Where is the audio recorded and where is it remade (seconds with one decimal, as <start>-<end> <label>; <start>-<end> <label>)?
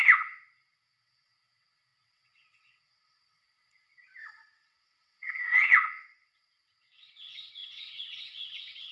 0.0-8.9 remade